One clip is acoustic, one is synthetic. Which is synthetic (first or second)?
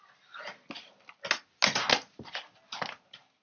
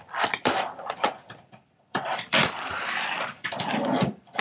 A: second